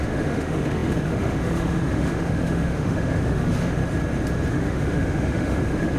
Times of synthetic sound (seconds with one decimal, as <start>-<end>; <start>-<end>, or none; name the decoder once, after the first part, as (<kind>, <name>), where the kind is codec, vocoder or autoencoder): 0.0-3.8 (autoencoder, DAC-VAE); 4.5-6.0